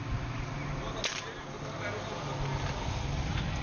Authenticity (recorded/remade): recorded